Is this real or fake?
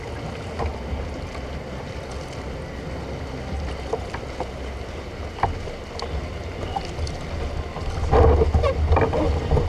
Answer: real